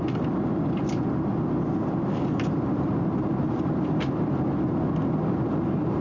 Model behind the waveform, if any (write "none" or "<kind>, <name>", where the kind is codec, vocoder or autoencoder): none